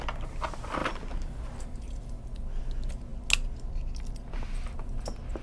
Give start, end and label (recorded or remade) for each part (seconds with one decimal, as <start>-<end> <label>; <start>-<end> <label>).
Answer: 0.0-5.4 recorded